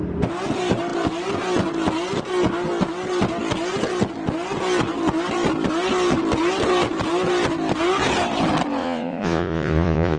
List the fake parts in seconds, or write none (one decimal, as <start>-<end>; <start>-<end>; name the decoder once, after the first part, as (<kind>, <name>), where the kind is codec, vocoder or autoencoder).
8.8-10.2 (vocoder, Vocos)